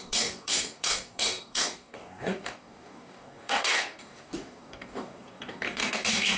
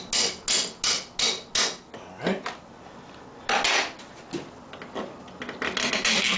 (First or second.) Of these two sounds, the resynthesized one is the first